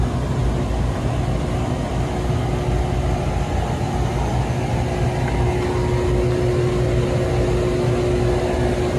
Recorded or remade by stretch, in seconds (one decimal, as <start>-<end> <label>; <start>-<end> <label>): 0.0-9.0 recorded